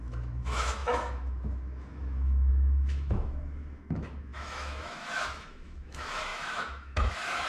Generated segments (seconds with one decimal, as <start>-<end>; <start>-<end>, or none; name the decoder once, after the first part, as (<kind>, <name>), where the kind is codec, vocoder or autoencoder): 0.0-7.5 (autoencoder, DAC-VAE)